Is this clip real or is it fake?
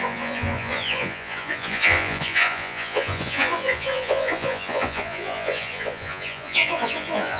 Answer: fake